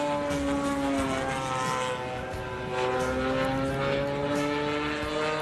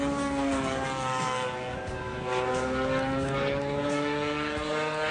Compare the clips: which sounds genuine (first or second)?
first